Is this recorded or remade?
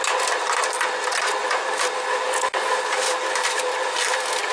recorded